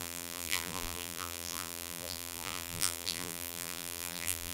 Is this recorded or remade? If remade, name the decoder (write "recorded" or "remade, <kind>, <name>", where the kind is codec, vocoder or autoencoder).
remade, vocoder, BigVGAN v2